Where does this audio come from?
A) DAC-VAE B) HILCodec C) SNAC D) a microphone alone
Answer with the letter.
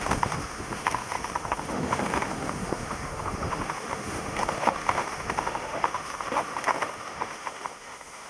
A